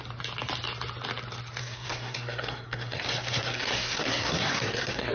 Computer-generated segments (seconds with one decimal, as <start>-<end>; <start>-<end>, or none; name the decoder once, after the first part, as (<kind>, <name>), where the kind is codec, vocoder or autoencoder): 1.6-5.1 (codec, SNAC)